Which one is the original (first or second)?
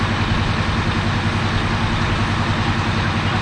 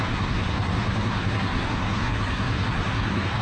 first